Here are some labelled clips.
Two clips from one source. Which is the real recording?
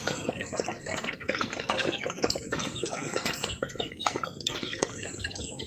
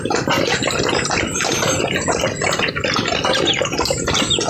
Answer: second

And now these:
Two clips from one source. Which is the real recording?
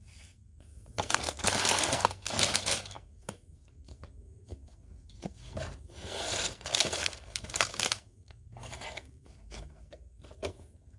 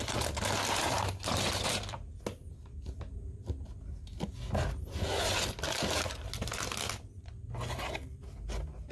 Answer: second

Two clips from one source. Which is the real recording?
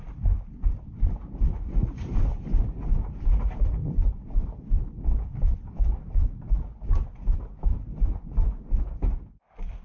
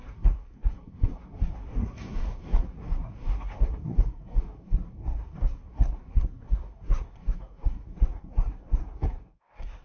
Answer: first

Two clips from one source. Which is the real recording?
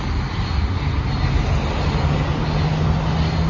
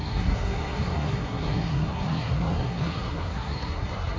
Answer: first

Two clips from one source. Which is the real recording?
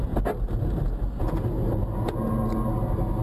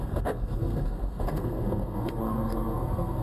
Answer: first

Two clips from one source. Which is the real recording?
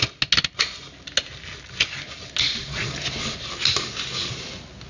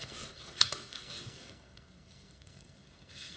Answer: first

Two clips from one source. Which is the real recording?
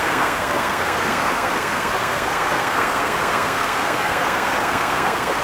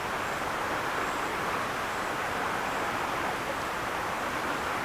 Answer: second